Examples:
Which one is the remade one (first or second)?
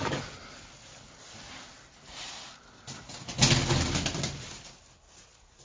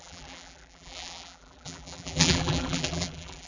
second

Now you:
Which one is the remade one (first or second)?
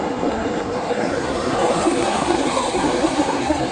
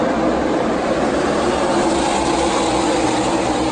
first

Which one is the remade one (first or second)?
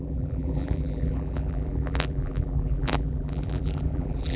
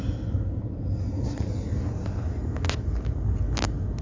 first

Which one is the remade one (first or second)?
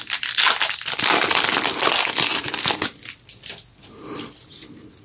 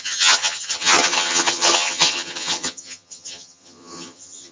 second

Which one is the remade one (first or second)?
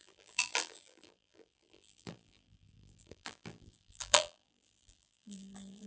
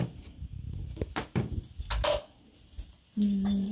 first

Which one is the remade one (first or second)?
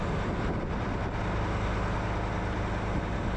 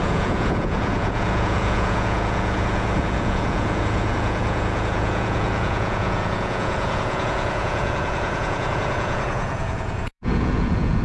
second